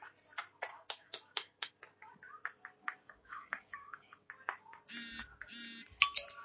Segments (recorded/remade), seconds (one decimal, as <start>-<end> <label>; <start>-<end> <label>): 0.0-0.7 recorded; 0.7-1.7 remade; 1.7-2.8 recorded; 2.8-4.3 remade; 4.3-6.4 recorded